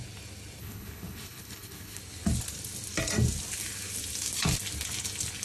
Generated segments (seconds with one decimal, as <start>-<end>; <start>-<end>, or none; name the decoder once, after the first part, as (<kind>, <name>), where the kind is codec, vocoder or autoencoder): 0.6-2.0 (codec, HILCodec)